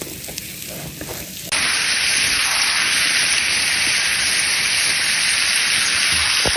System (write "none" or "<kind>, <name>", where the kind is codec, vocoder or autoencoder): none